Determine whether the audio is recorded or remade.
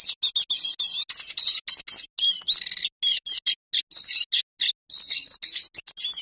recorded